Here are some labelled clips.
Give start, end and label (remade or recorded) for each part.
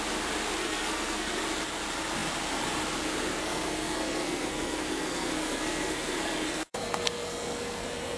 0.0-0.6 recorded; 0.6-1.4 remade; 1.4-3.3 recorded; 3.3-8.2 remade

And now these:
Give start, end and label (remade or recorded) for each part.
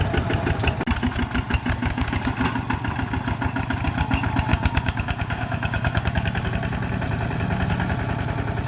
0.0-1.8 recorded; 1.8-2.3 remade; 2.3-4.5 recorded; 4.5-6.5 remade; 6.5-8.7 recorded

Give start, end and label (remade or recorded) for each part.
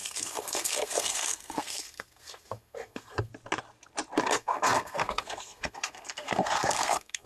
0.0-3.3 remade; 3.3-4.2 recorded; 4.2-7.3 remade